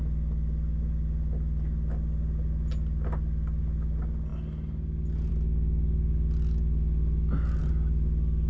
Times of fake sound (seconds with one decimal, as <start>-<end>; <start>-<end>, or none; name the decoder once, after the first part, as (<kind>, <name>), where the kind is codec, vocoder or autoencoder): none